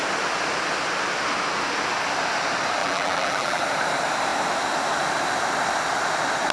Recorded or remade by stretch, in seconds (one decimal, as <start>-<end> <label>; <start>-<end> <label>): 0.0-2.8 recorded; 2.8-3.6 remade; 3.6-6.5 recorded